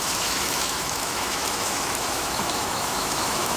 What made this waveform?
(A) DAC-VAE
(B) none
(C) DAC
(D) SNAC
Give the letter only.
A